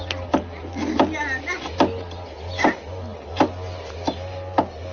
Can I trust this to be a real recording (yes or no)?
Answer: yes